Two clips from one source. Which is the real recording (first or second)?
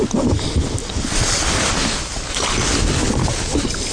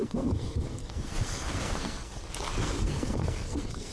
first